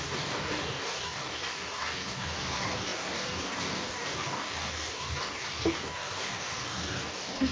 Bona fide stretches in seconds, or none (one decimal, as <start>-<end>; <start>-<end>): none